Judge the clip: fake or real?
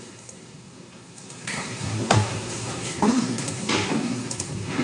fake